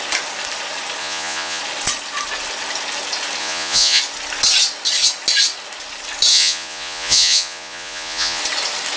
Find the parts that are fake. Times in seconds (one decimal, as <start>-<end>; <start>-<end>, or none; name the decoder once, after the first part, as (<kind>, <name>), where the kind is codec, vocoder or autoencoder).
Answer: 1.0-1.6 (vocoder, Vocos); 3.4-4.0; 6.3-8.4